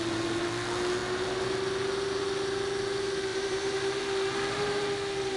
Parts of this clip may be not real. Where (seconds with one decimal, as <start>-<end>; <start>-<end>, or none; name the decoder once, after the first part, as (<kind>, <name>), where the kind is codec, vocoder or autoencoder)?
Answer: 3.3-4.0 (vocoder, BigVGAN v2)